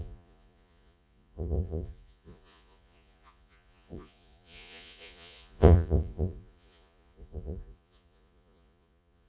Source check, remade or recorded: remade